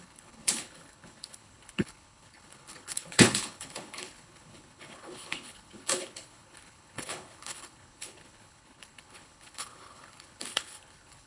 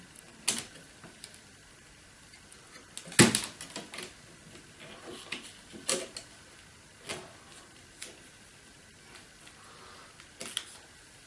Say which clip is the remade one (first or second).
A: first